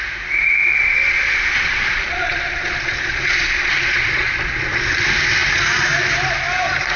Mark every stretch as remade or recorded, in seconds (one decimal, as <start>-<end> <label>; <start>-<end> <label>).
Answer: 0.0-0.7 recorded; 0.7-4.9 remade; 4.9-7.0 recorded